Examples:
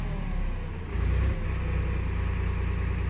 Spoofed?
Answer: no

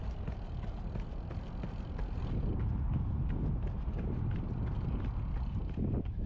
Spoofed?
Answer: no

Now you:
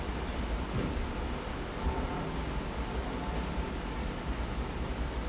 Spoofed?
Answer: no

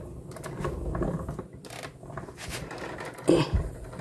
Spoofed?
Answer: no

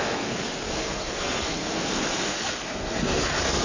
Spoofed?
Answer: yes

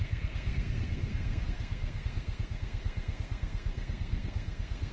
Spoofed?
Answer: yes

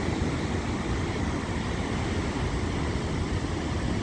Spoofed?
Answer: no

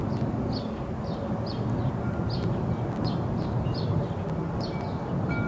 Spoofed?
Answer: no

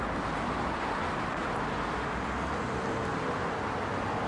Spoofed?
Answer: no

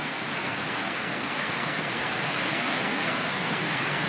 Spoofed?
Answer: yes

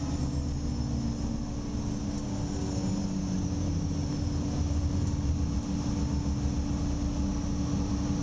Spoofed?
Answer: no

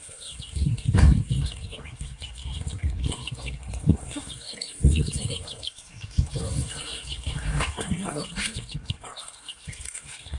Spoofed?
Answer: yes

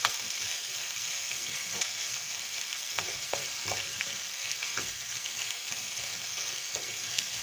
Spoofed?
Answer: yes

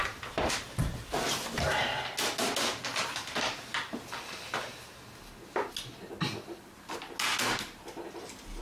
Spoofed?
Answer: no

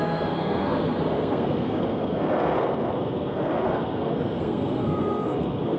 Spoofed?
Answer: yes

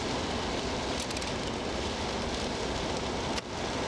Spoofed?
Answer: no